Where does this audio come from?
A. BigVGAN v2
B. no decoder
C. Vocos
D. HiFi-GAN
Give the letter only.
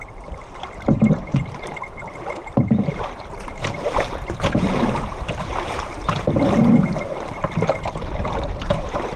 A